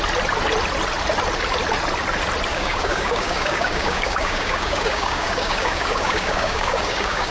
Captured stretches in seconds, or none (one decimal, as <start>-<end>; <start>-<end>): 0.0-2.5